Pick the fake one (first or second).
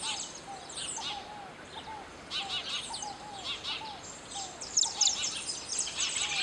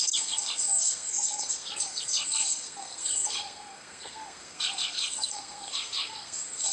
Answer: second